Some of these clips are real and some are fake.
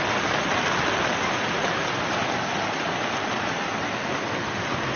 real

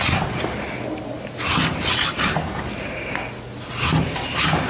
real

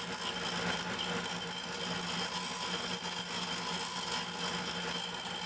real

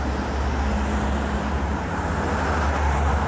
real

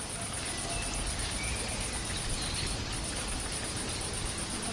real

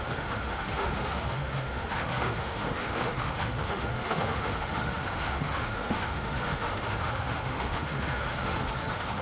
fake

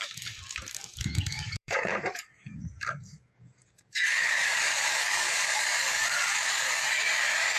fake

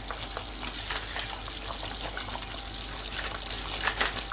real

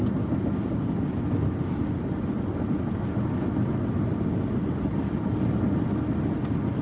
real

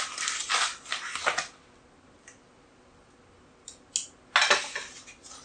real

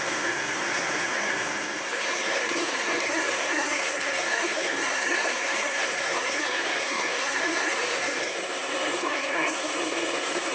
fake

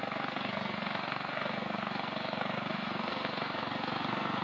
fake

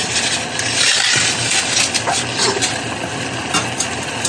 real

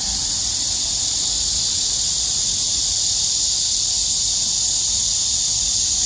real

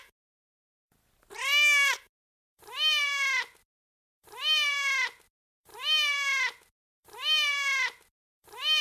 real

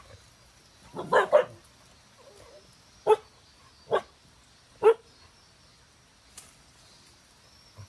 real